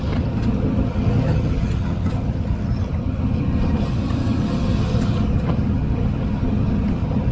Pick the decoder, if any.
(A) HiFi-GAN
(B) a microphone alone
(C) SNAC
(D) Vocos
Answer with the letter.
A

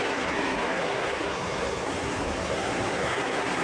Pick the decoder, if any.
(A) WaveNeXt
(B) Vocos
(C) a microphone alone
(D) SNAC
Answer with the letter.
D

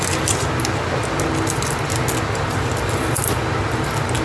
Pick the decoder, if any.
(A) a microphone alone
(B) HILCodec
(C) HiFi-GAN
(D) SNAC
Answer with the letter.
A